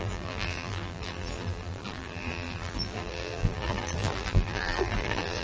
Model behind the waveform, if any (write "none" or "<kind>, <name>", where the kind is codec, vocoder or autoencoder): vocoder, BigVGAN v2